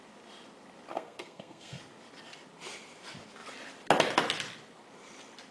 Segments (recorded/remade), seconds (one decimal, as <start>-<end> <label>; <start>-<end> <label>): 0.0-0.9 recorded; 0.9-1.8 remade; 1.8-5.5 recorded